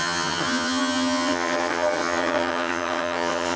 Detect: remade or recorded remade